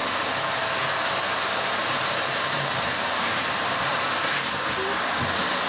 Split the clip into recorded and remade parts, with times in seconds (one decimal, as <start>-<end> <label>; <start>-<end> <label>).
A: 0.0-1.8 recorded; 1.8-3.9 remade; 3.9-5.7 recorded